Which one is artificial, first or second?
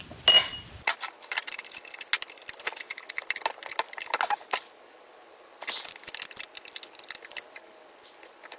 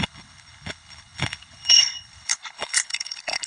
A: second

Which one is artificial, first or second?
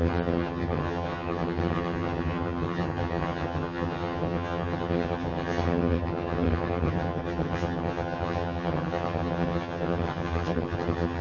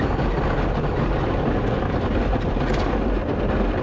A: first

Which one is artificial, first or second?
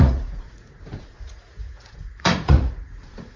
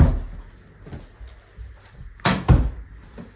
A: first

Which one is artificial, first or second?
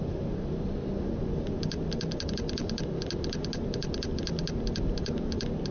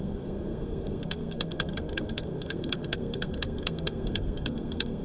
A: second